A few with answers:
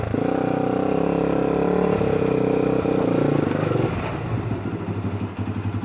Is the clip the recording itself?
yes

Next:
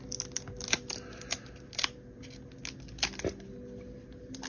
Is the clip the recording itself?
yes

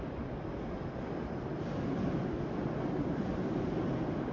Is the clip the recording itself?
yes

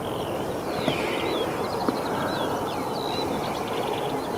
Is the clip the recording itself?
yes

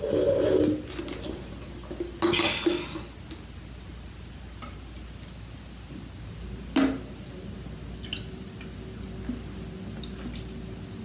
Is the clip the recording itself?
yes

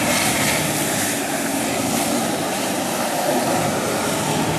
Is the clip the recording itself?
yes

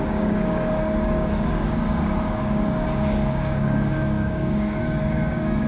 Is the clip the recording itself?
no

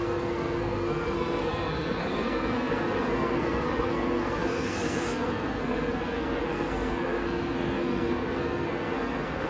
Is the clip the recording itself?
no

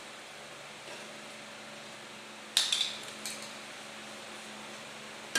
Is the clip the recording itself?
yes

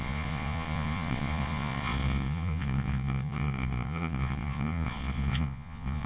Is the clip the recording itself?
no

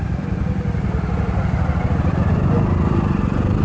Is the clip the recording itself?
yes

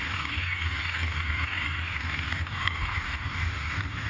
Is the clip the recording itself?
no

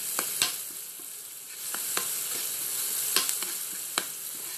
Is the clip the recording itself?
yes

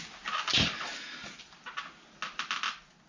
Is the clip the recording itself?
yes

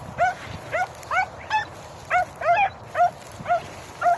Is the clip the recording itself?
yes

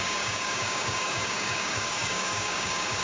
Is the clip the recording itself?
no